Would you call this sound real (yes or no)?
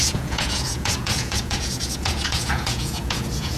no